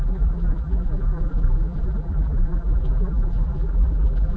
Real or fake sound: fake